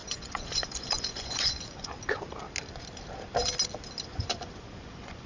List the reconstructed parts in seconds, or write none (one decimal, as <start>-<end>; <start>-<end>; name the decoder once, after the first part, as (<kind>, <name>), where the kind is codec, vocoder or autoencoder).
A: 0.0-1.9 (vocoder, Vocos); 4.1-5.3